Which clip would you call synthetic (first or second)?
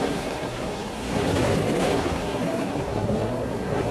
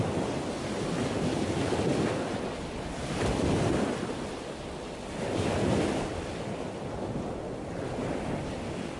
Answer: first